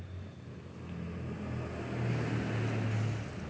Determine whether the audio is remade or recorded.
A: recorded